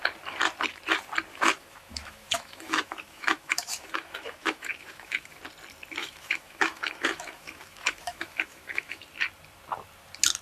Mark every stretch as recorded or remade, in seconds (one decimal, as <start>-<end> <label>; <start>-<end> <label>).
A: 0.0-1.3 recorded; 1.3-5.4 remade; 5.4-6.0 recorded; 6.0-9.0 remade; 9.0-10.4 recorded